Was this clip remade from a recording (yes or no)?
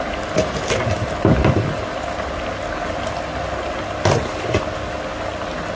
no